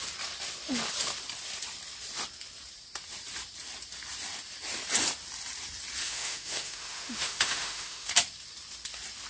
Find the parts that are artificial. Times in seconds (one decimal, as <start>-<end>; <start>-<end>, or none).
6.0-8.1